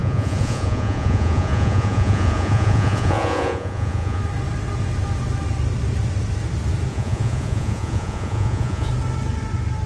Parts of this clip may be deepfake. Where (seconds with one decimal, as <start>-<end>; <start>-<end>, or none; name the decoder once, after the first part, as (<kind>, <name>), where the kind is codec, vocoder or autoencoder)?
0.0-4.2 (vocoder, Vocos); 6.9-8.9